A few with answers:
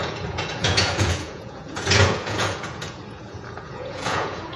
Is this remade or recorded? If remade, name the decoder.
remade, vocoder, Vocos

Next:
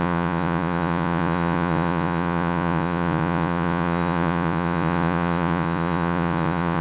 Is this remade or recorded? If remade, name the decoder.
remade, vocoder, Vocos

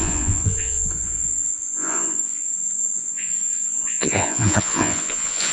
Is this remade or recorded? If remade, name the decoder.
remade, vocoder, Vocos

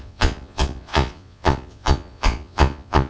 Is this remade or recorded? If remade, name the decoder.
remade, vocoder, Vocos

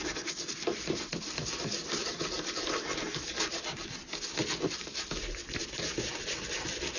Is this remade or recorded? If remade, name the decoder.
recorded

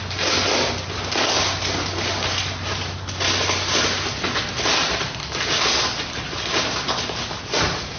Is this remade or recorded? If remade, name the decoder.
recorded